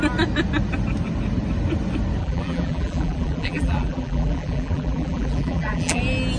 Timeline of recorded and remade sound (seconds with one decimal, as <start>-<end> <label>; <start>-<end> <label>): 0.0-2.2 recorded; 2.2-6.0 remade; 6.0-6.4 recorded